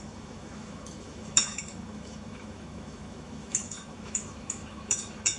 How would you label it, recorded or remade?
remade